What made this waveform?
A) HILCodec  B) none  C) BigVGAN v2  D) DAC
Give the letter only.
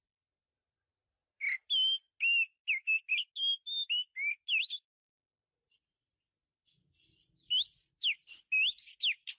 B